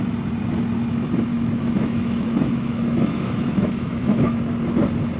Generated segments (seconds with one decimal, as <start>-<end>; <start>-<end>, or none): 1.3-4.4